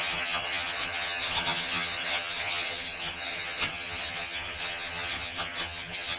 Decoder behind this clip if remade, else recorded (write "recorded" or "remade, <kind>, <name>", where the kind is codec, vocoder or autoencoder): remade, vocoder, HiFi-GAN